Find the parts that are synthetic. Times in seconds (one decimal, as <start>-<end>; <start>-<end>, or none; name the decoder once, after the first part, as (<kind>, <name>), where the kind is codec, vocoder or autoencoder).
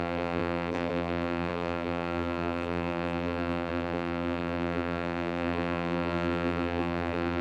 0.0-7.4 (vocoder, BigVGAN v2)